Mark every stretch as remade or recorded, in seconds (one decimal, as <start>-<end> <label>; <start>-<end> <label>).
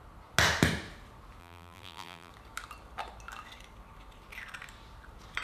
0.0-1.4 recorded; 1.4-2.3 remade; 2.3-5.4 recorded